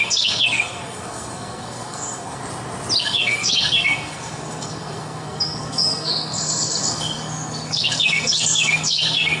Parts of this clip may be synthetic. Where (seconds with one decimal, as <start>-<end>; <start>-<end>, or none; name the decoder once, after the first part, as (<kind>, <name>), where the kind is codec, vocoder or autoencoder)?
0.0-2.4 (codec, SNAC); 3.0-9.4